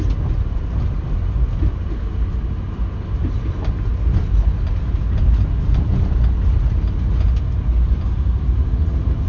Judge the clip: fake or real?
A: real